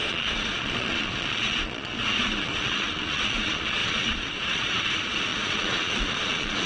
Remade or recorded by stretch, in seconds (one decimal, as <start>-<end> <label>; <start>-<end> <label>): 0.0-6.7 remade